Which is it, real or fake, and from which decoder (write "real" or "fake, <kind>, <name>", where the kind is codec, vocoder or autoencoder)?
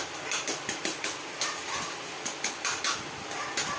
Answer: real